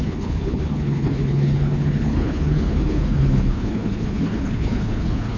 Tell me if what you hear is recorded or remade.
remade